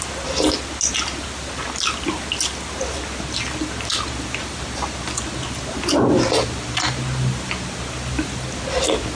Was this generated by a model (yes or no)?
no